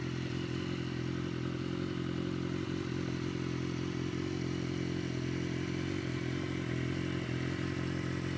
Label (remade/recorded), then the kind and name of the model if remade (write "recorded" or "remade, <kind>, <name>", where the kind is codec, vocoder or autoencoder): recorded